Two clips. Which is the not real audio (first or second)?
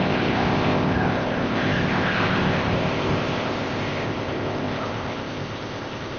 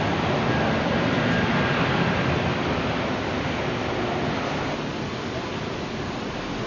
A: first